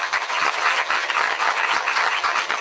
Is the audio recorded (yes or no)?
no